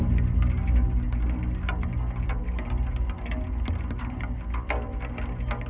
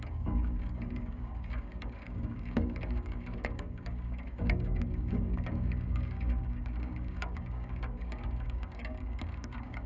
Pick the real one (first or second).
first